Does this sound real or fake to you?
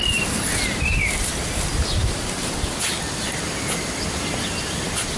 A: real